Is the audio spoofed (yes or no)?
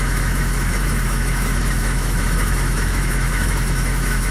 yes